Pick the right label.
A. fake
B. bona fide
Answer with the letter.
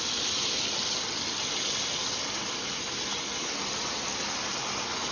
B